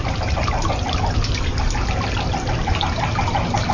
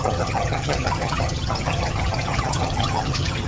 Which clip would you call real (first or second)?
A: first